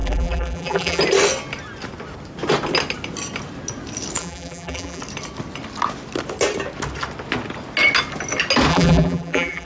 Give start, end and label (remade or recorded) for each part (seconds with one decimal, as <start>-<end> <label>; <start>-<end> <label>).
0.0-1.0 remade; 1.0-4.2 recorded; 4.2-5.0 remade; 5.0-8.7 recorded; 8.7-9.7 remade